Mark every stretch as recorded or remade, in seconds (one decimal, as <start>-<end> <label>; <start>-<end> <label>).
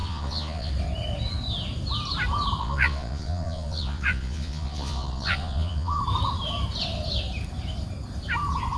0.0-0.7 remade; 0.7-2.6 recorded; 2.6-6.0 remade; 6.0-8.8 recorded